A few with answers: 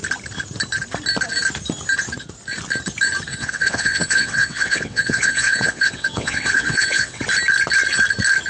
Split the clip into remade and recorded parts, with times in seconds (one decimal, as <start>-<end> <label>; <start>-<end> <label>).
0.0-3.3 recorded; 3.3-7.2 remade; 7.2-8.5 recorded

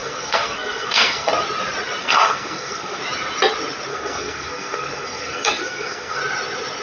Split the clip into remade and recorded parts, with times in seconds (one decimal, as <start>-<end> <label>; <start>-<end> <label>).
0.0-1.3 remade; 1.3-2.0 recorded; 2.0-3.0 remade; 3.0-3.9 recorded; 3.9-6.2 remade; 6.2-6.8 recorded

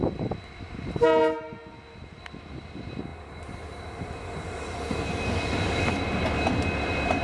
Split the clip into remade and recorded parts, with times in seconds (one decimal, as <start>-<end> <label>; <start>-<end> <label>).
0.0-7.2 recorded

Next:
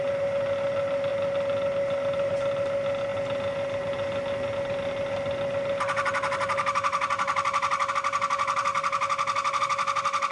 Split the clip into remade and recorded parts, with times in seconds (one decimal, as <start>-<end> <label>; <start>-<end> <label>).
0.0-10.3 recorded

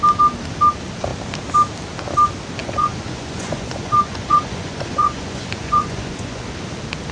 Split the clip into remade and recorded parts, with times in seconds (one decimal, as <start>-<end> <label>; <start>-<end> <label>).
0.0-2.6 recorded; 2.6-6.4 remade; 6.4-7.1 recorded

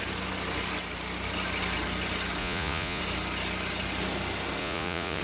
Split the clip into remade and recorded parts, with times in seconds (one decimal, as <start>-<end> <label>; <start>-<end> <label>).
0.0-2.4 recorded; 2.4-3.0 remade; 3.0-4.6 recorded; 4.6-5.2 remade